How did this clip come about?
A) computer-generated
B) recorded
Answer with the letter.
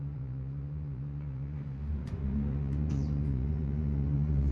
A